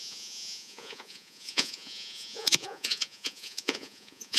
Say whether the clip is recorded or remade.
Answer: remade